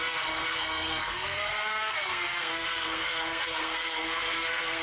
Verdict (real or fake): fake